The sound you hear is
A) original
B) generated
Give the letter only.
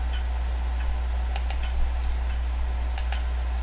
A